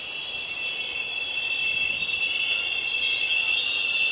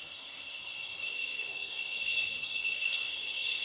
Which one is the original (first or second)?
first